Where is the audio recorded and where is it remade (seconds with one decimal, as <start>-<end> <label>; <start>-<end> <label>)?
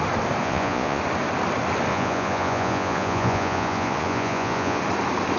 0.0-0.4 recorded; 0.4-1.0 remade; 1.0-1.9 recorded; 1.9-4.8 remade; 4.8-5.4 recorded